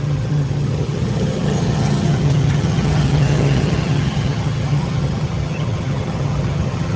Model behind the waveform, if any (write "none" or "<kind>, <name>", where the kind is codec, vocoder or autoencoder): vocoder, HiFi-GAN